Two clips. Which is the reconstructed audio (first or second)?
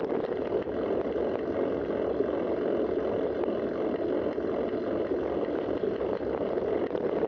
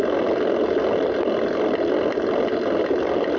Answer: second